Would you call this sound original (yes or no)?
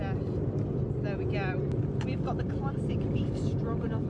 yes